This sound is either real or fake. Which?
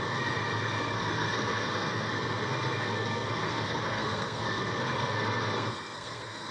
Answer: fake